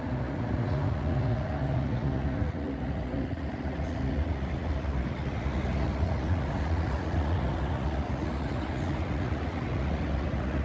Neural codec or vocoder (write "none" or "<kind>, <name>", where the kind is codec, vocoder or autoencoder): vocoder, Vocos